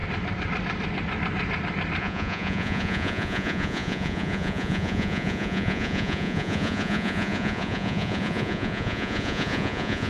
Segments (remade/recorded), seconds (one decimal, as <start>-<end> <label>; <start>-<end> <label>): 0.0-2.0 recorded; 2.0-10.1 remade